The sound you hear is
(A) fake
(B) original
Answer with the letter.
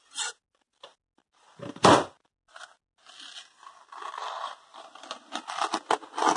B